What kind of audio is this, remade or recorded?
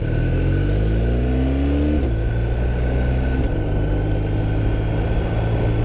recorded